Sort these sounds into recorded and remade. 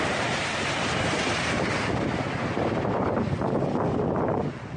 remade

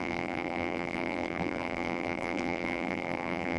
remade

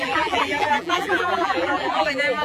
remade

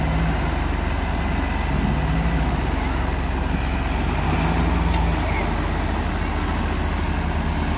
recorded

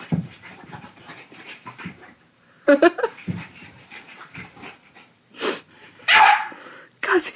remade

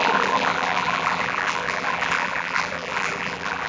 remade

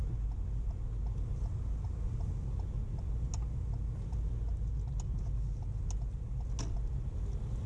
recorded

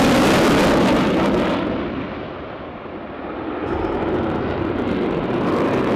recorded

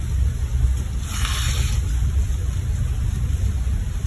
recorded